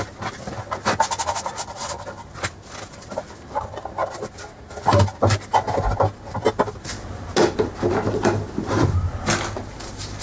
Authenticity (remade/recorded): recorded